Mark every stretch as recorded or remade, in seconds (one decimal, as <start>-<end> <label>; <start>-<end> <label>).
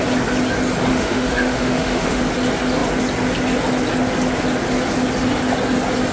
0.0-0.9 recorded; 0.9-2.2 remade; 2.2-6.1 recorded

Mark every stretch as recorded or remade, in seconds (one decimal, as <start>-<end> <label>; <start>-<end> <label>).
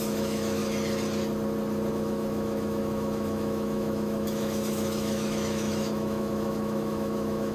0.0-0.6 remade; 0.6-1.9 recorded; 1.9-7.5 remade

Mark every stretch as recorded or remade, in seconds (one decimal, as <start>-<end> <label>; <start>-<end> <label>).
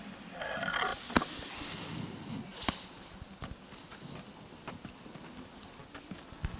0.0-6.6 recorded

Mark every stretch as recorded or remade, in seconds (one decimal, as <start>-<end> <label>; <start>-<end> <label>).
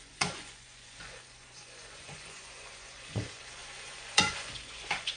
0.0-5.2 remade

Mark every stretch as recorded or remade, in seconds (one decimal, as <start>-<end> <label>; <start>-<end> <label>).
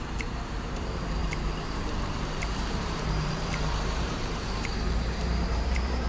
0.0-6.1 remade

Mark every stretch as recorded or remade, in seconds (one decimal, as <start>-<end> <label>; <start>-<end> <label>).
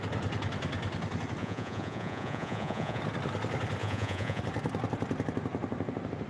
0.0-1.4 recorded; 1.4-3.0 remade; 3.0-3.8 recorded; 3.8-4.4 remade; 4.4-6.3 recorded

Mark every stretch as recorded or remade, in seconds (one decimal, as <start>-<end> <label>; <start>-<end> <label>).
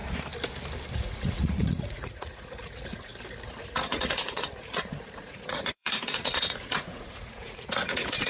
0.0-1.0 recorded; 1.0-3.1 remade; 3.1-3.7 recorded; 3.7-8.3 remade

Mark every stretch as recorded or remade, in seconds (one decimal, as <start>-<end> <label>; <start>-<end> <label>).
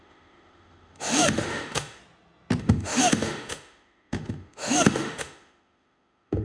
0.0-2.0 remade; 2.0-2.6 recorded; 2.6-6.4 remade